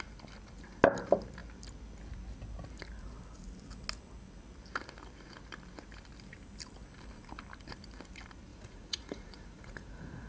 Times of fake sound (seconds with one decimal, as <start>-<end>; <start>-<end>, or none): 8.5-10.3